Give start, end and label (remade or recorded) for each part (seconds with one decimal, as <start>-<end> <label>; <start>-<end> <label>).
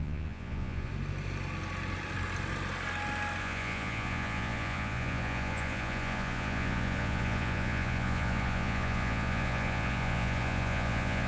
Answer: 0.0-0.9 remade; 0.9-3.4 recorded; 3.4-11.3 remade